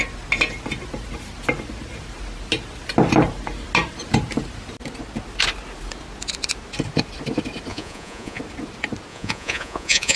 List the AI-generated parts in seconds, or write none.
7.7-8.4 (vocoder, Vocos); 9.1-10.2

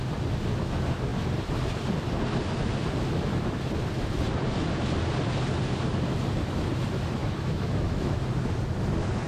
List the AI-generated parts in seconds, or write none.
7.2-8.2 (autoencoder, DAC-VAE)

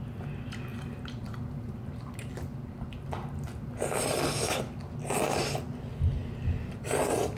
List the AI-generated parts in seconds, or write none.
6.2-7.0 (vocoder, BigVGAN v2)